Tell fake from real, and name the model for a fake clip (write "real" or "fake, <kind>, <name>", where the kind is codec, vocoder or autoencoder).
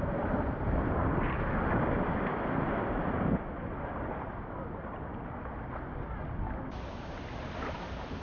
real